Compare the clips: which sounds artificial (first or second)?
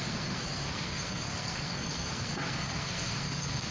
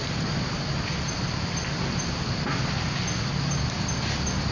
first